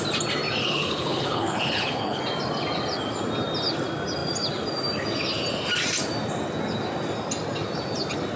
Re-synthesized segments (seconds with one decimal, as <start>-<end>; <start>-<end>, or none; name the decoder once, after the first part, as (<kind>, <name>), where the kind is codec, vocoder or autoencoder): 0.6-2.2 (codec, HILCodec)